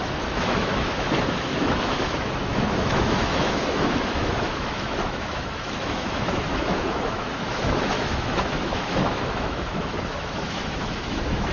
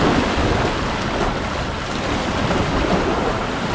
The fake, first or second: first